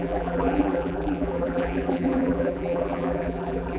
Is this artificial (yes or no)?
yes